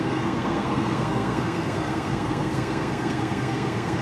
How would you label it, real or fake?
fake